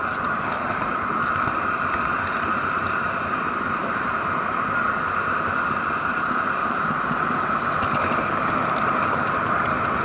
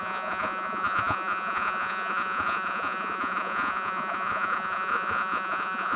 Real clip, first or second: first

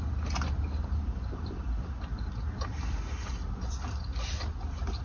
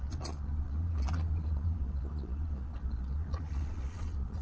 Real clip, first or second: first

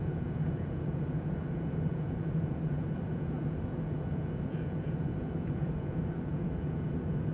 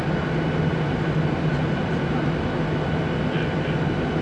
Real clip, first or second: second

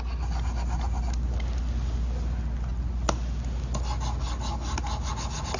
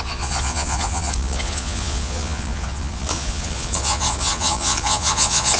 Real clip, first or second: first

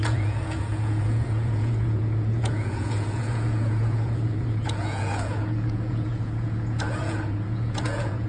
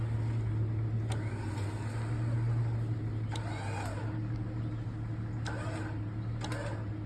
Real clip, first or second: second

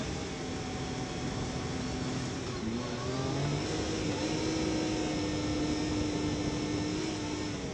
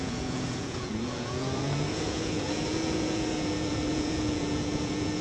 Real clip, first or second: first